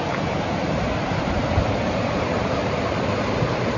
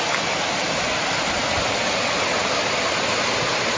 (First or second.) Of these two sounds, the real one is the second